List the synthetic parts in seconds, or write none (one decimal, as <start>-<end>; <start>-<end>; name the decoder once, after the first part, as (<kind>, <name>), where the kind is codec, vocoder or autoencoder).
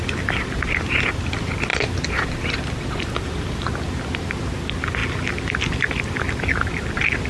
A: none